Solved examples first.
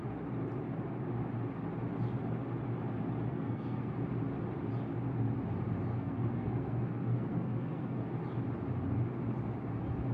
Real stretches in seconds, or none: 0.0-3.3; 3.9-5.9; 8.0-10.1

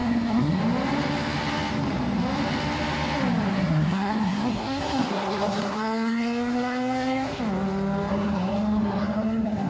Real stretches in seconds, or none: 0.6-3.5; 7.4-8.1